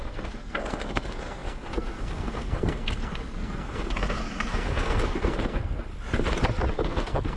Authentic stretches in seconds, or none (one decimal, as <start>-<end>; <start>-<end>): 5.9-6.7